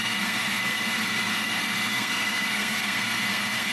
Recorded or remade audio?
remade